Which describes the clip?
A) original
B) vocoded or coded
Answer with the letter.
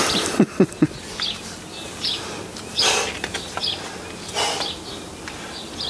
A